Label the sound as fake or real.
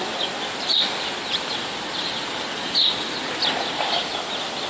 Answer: real